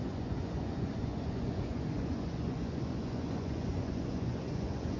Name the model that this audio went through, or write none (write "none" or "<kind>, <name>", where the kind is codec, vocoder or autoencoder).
vocoder, Vocos